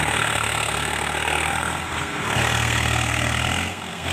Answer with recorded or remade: remade